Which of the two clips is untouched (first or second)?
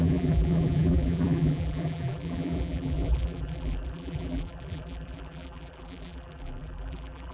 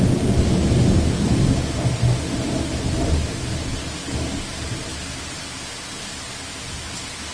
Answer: second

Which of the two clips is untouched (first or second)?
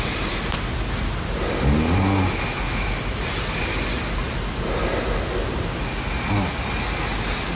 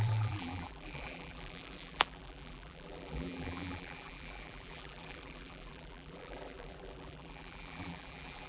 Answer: first